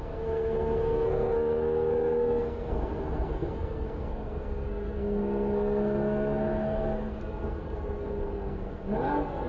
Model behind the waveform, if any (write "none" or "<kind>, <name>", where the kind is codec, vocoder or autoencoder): codec, SNAC